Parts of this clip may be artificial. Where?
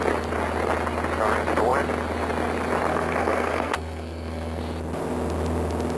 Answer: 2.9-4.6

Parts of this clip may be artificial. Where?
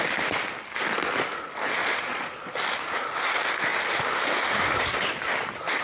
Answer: 1.8-2.6